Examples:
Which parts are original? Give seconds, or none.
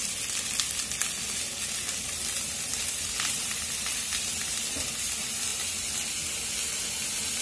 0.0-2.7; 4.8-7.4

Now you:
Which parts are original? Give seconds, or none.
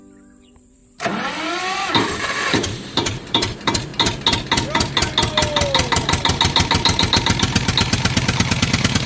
0.8-1.5; 3.9-9.1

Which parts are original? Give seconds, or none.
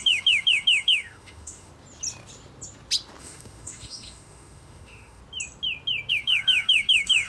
1.7-3.2; 5.2-6.1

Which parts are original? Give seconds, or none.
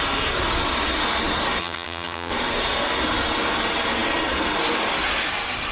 0.0-1.6; 2.3-5.7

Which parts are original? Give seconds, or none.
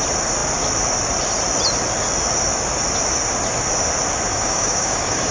0.0-4.3